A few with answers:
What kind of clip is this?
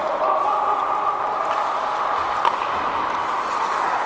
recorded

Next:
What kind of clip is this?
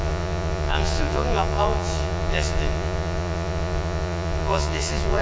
remade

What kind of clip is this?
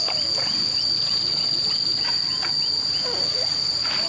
recorded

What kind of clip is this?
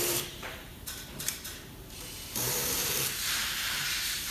remade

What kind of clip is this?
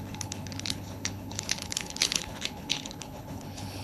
remade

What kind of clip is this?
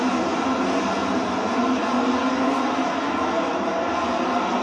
recorded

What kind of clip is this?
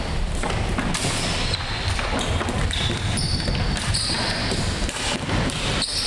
recorded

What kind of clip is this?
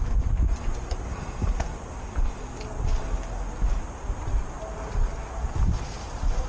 recorded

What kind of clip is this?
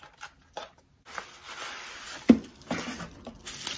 recorded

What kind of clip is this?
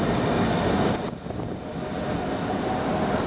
recorded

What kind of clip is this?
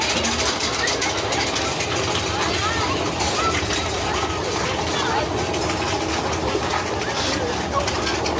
recorded